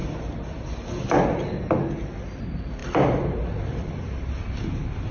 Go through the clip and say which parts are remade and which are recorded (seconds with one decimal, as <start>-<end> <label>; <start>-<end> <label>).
0.0-2.8 recorded; 2.8-4.3 remade; 4.3-5.1 recorded

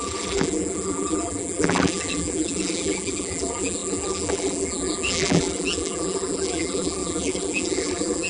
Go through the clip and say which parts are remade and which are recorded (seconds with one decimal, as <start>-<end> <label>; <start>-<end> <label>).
0.0-8.3 remade

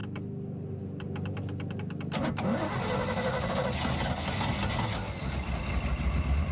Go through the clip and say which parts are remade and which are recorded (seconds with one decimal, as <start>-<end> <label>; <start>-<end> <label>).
0.0-6.5 recorded